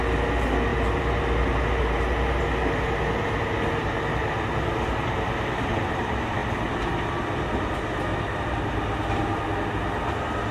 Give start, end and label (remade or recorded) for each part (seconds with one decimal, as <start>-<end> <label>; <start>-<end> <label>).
0.0-0.7 recorded; 0.7-2.4 remade; 2.4-8.1 recorded; 8.1-9.4 remade; 9.4-10.5 recorded